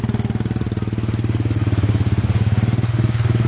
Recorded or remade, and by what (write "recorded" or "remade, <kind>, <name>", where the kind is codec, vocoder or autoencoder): recorded